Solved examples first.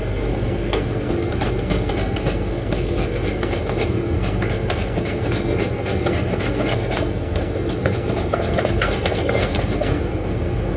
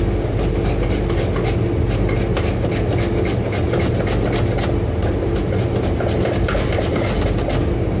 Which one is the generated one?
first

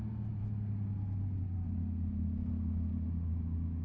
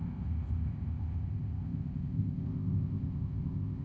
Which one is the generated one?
second